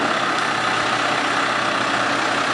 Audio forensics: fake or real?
real